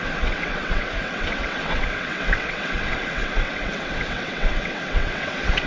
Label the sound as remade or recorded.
remade